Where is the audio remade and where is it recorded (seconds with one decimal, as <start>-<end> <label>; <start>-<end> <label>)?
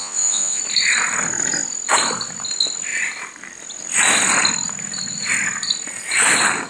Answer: 0.0-0.6 remade; 0.6-6.7 recorded